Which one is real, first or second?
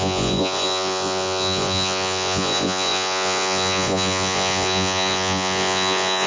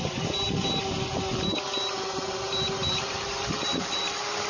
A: second